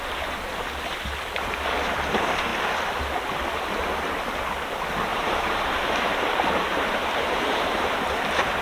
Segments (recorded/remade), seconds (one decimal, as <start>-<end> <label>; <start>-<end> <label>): 0.0-5.1 recorded; 5.1-8.6 remade